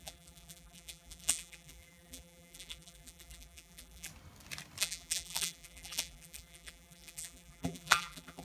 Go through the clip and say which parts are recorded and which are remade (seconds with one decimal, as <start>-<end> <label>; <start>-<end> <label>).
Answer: 0.0-4.1 remade; 4.1-4.8 recorded; 4.8-8.4 remade